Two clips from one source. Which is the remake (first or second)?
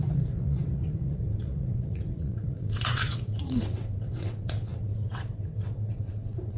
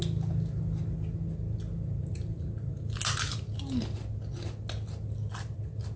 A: first